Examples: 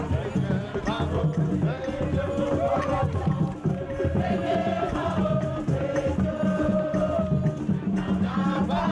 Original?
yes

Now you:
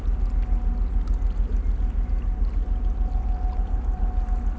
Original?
yes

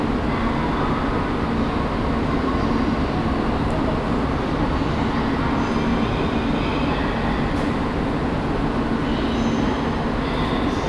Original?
yes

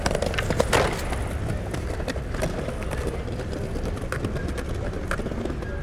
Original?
yes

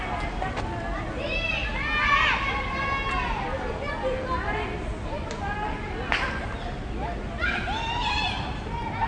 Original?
yes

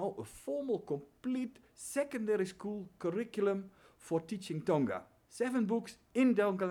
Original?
yes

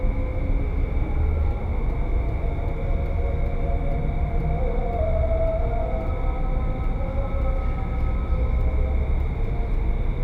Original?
yes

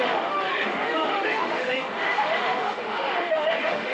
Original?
no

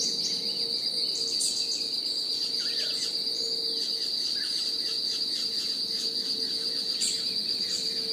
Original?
yes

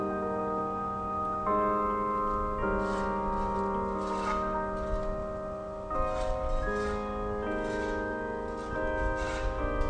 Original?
yes